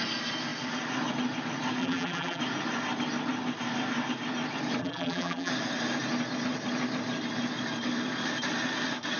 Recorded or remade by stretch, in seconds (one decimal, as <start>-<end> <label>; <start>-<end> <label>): 0.0-1.8 recorded; 1.8-2.4 remade; 2.4-4.8 recorded; 4.8-5.5 remade; 5.5-9.2 recorded